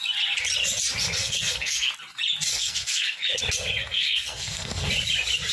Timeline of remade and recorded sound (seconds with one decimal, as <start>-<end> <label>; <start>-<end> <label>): 0.0-1.2 recorded; 1.2-1.9 remade; 1.9-2.5 recorded; 2.5-3.4 remade; 3.4-3.8 recorded; 3.8-4.9 remade; 4.9-5.5 recorded